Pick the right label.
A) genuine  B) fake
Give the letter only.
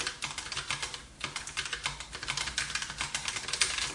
A